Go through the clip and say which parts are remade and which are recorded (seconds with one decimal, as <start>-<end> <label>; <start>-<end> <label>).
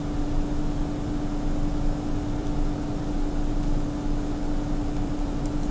0.0-2.4 recorded; 2.4-3.0 remade; 3.0-4.8 recorded; 4.8-5.7 remade